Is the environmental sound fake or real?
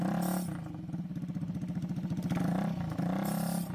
real